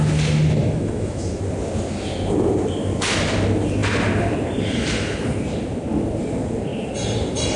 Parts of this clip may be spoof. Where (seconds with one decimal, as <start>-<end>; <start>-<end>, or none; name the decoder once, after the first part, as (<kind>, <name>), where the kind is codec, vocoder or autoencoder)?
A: 0.6-1.4 (autoencoder, DAC-VAE)